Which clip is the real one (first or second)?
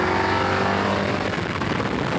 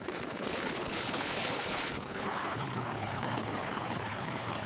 first